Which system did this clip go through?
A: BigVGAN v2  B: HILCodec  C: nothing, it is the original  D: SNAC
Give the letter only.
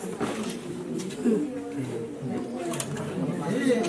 C